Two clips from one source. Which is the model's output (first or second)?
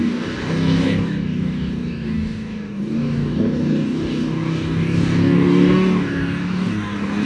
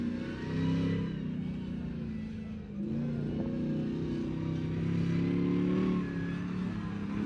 first